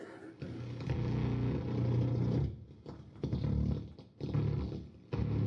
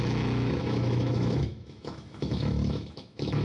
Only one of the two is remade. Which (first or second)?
second